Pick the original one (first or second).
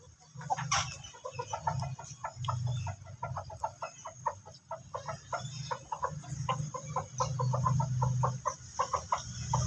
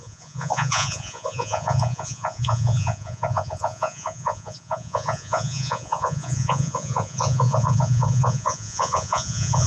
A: first